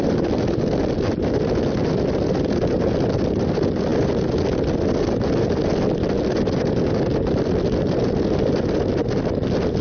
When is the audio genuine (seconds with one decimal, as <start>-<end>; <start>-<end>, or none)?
0.0-9.8